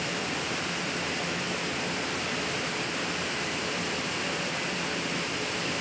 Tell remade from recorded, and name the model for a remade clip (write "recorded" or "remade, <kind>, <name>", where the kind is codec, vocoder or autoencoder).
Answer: recorded